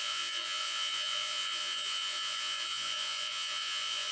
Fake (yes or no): yes